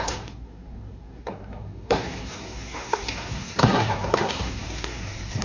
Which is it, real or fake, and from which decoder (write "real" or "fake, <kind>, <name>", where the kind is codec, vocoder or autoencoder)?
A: fake, codec, SNAC